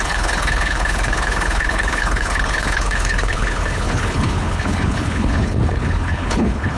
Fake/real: fake